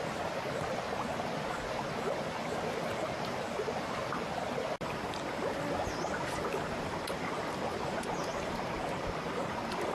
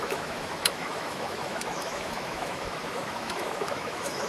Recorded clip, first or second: first